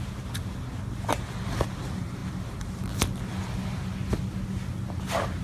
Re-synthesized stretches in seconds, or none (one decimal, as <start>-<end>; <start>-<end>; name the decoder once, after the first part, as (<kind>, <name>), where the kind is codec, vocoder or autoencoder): none